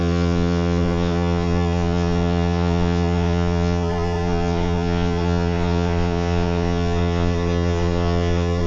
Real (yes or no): no